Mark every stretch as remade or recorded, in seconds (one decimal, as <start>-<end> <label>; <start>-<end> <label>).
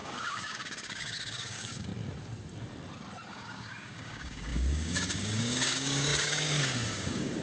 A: 0.0-1.9 remade; 1.9-3.3 recorded; 3.3-7.4 remade